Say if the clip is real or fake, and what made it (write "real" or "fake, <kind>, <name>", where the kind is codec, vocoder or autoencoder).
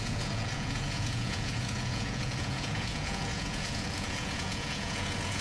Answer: fake, vocoder, Vocos